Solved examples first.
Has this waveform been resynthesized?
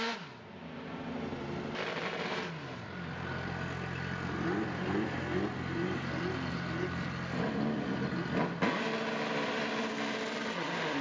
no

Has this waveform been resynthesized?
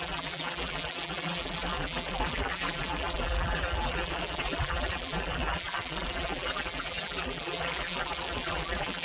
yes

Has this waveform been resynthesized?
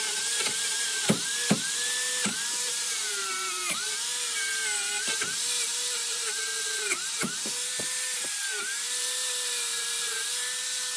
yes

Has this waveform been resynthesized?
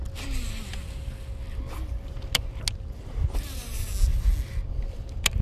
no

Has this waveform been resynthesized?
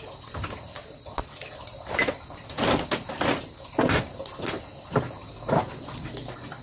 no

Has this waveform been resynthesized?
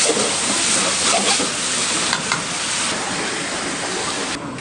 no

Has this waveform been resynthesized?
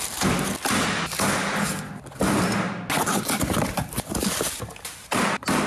no